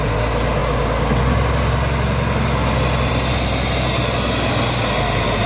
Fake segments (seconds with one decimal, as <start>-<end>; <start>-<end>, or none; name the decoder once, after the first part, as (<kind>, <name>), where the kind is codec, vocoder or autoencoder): none